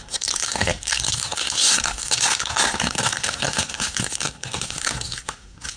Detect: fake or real fake